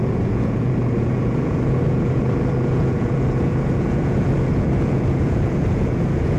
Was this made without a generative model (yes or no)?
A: no